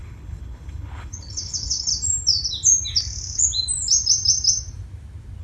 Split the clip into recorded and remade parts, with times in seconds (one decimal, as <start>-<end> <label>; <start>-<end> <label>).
0.0-1.9 remade; 1.9-5.4 recorded